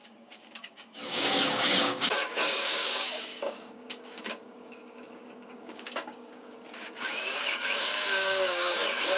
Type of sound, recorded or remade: remade